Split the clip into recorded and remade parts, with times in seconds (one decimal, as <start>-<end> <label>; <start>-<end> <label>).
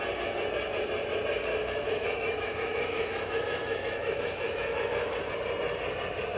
0.0-1.5 recorded; 1.5-5.3 remade; 5.3-6.4 recorded